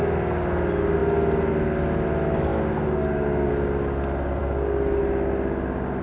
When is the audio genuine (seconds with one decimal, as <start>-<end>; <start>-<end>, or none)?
0.0-2.5; 3.5-4.4; 5.0-6.0

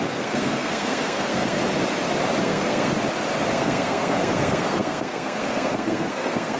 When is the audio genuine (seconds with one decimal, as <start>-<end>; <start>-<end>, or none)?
1.6-2.4; 2.9-3.5

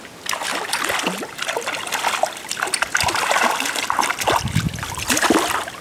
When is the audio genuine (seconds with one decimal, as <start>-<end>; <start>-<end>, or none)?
0.0-5.8

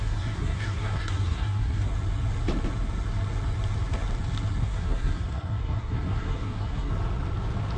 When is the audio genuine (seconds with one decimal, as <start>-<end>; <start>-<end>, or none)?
1.9-4.6; 6.9-7.8

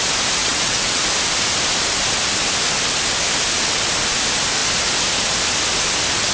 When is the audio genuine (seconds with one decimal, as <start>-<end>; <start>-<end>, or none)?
0.0-0.4; 1.0-6.3